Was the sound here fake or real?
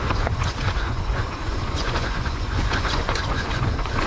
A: fake